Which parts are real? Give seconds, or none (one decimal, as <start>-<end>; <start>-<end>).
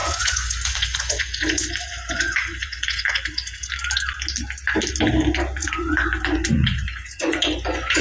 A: 3.7-5.6